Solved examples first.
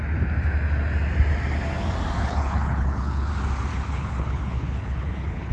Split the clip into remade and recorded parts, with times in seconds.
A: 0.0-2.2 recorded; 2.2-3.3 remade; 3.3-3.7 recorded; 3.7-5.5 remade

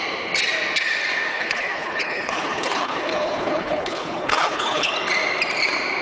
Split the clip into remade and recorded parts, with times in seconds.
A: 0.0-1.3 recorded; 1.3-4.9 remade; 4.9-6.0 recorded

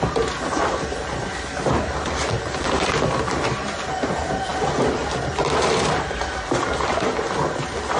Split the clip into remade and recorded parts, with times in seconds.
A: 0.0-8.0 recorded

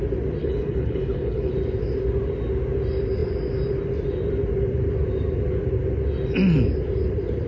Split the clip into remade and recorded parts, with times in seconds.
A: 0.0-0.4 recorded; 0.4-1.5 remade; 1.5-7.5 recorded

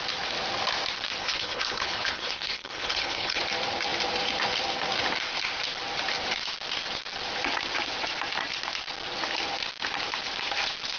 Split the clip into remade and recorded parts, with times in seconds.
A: 0.0-1.2 recorded; 1.2-3.4 remade; 3.4-11.0 recorded

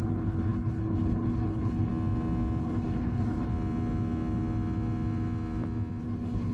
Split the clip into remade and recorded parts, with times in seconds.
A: 0.0-1.9 remade; 1.9-2.6 recorded; 2.6-3.5 remade; 3.5-6.0 recorded; 6.0-6.5 remade

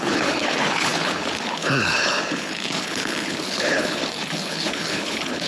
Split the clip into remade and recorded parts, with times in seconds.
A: 0.0-5.5 remade